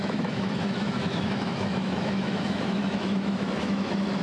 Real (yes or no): no